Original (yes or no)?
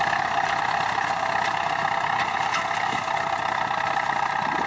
yes